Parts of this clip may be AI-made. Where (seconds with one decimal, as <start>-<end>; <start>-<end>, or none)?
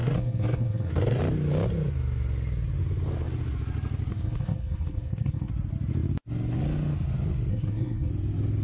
0.0-1.2; 4.1-5.5; 7.5-8.1